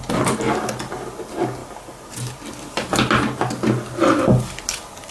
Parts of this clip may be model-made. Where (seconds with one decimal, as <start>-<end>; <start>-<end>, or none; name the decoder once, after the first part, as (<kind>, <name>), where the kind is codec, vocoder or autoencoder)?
none